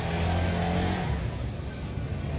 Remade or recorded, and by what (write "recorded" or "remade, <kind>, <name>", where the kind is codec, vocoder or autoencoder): recorded